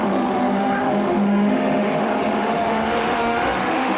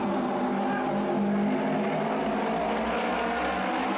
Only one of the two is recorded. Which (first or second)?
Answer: second